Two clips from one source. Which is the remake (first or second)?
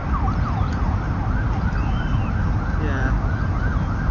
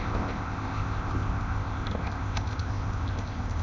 second